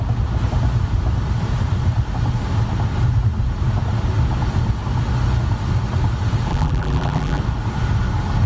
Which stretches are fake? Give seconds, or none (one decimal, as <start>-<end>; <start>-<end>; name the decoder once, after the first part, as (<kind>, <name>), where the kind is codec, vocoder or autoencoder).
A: 6.5-7.4 (vocoder, BigVGAN v2)